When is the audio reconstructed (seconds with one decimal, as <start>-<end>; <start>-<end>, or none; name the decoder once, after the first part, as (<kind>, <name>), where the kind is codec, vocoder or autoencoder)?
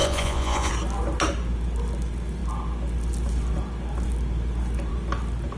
0.0-0.7 (vocoder, Vocos)